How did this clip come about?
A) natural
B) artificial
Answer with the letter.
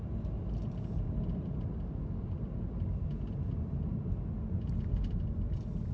A